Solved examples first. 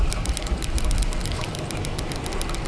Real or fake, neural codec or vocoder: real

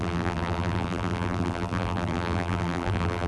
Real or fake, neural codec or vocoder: fake, vocoder, BigVGAN v2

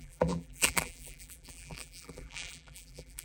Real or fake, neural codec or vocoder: fake, vocoder, BigVGAN v2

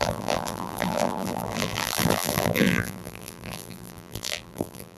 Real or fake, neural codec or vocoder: fake, vocoder, BigVGAN v2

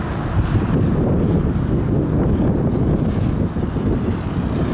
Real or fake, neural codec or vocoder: real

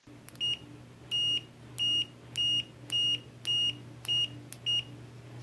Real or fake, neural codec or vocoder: real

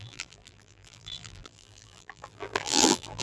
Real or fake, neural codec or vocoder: fake, vocoder, BigVGAN v2